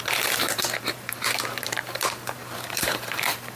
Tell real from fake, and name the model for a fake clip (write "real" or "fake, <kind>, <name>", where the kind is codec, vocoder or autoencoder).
fake, vocoder, BigVGAN v2